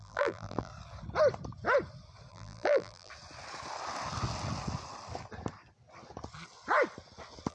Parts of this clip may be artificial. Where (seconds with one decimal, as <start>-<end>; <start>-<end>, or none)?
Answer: 0.0-0.7; 2.3-3.1